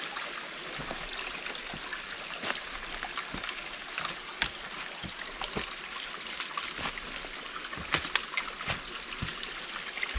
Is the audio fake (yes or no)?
no